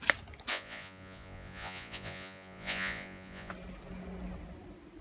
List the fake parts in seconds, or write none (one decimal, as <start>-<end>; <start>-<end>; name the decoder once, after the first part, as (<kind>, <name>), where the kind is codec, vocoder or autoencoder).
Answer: 0.5-3.5 (vocoder, Vocos)